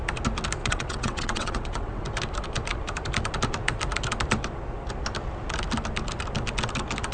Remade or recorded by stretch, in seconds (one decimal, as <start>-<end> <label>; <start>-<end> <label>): 0.0-0.6 recorded; 0.6-2.0 remade; 2.0-7.1 recorded